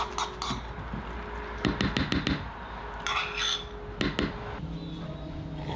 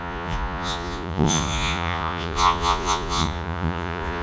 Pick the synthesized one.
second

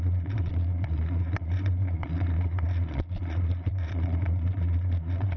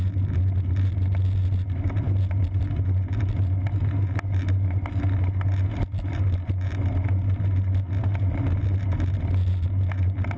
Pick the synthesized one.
first